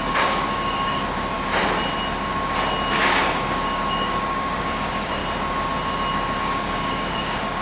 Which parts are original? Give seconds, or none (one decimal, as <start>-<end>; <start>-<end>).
1.5-2.9; 5.2-6.4